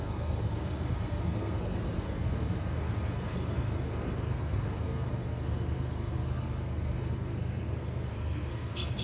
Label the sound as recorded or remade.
remade